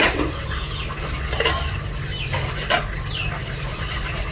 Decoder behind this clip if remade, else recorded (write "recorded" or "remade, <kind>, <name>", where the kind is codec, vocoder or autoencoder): recorded